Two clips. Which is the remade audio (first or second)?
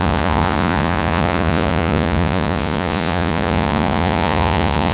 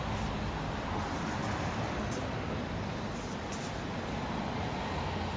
first